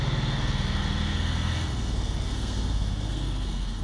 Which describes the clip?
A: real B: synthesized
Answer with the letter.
B